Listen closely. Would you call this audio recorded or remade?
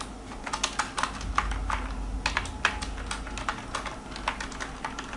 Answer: recorded